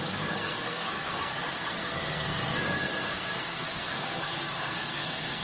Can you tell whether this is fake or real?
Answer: fake